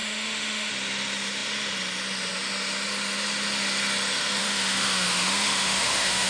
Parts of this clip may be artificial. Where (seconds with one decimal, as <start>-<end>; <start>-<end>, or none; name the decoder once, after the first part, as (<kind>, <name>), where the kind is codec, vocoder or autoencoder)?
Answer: 0.0-0.7 (autoencoder, DAC-VAE); 4.4-6.3